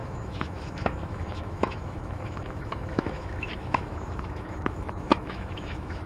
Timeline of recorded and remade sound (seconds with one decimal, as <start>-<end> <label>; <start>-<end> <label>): 0.0-6.1 remade